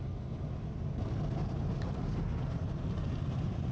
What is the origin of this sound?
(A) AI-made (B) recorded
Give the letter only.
B